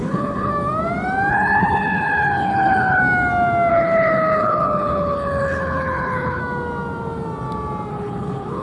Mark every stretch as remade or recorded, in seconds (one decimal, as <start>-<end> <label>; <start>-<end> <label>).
0.0-0.5 remade; 0.5-1.3 recorded; 1.3-3.0 remade; 3.0-3.7 recorded; 3.7-6.4 remade; 6.4-7.9 recorded; 7.9-8.6 remade